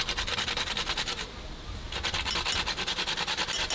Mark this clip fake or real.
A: real